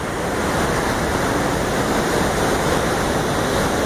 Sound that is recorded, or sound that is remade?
recorded